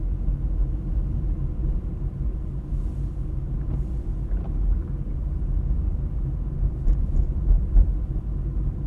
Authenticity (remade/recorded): recorded